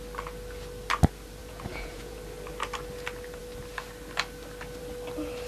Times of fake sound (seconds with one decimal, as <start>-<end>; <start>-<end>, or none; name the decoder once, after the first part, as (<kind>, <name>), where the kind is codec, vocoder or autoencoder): 1.4-2.2 (vocoder, Vocos)